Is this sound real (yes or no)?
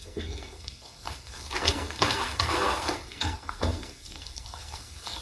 no